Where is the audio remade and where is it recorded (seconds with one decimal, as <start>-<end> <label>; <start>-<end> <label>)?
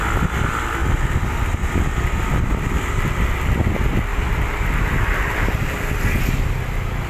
0.0-7.1 recorded